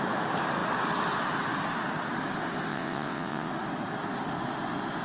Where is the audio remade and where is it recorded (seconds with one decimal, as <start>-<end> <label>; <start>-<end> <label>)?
0.0-2.7 recorded; 2.7-3.5 remade; 3.5-5.0 recorded